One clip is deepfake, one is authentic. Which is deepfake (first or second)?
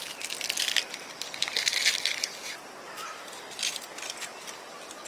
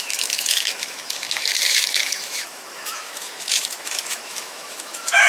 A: second